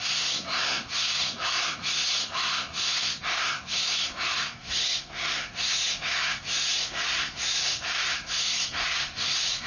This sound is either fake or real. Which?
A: fake